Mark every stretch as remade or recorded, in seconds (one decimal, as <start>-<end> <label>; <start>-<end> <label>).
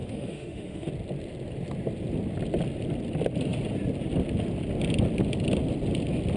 0.0-0.9 remade; 0.9-6.4 recorded